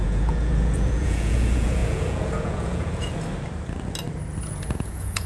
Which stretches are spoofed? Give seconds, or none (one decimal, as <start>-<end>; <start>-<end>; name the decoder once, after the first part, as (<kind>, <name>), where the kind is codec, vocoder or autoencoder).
0.0-3.1 (vocoder, Vocos); 4.4-5.3